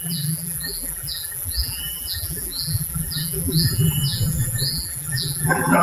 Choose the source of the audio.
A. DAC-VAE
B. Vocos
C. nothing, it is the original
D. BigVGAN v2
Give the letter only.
D